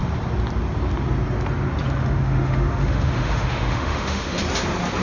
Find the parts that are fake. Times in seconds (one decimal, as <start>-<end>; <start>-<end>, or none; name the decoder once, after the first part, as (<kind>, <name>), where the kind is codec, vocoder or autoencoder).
2.0-4.4 (autoencoder, DAC-VAE)

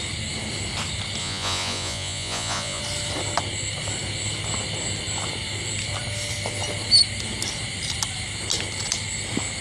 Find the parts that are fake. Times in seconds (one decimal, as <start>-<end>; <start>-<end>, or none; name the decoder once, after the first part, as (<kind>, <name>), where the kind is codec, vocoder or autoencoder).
1.2-2.8 (vocoder, Vocos)

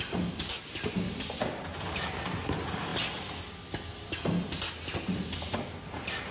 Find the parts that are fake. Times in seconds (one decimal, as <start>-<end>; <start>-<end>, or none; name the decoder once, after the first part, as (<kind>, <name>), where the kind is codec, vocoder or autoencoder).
none

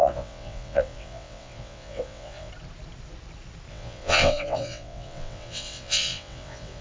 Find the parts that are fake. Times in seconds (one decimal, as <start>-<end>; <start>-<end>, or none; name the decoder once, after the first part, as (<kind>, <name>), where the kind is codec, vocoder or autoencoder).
0.0-2.5 (vocoder, WaveNeXt); 3.7-6.8

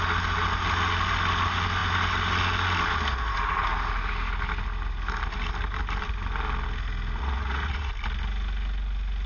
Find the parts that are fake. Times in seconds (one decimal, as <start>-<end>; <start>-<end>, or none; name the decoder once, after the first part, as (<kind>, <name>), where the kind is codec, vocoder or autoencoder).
7.2-7.9 (vocoder, Vocos)

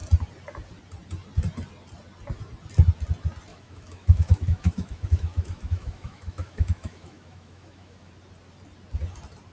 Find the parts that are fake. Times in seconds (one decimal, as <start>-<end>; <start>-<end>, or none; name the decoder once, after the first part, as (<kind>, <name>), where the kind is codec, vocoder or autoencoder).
3.5-8.1 (autoencoder, DAC-VAE)

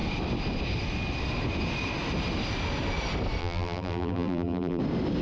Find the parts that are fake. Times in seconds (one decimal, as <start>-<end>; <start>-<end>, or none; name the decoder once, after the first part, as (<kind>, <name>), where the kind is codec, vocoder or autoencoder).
3.4-4.8 (vocoder, BigVGAN v2)